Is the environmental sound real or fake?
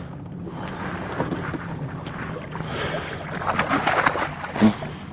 real